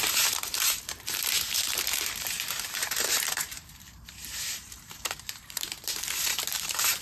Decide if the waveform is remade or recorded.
remade